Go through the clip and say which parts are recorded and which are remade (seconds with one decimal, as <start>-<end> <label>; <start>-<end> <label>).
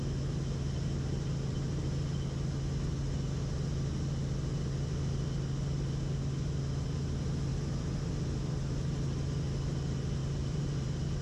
0.0-7.5 recorded; 7.5-8.1 remade; 8.1-10.2 recorded; 10.2-11.2 remade